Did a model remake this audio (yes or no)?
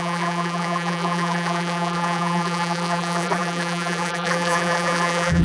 yes